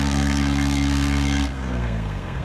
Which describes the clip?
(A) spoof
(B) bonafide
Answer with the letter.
A